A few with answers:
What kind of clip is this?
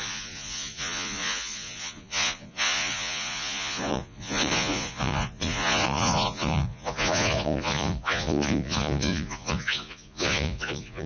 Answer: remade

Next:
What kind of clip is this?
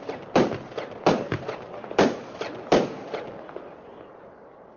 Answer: recorded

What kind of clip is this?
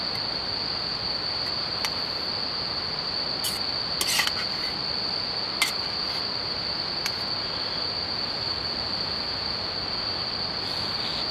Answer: recorded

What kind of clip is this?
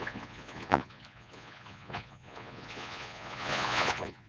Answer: remade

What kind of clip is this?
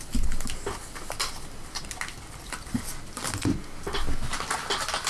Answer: recorded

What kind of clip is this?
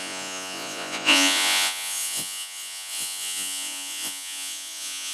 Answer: remade